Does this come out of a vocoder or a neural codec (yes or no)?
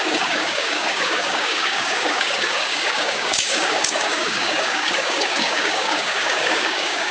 yes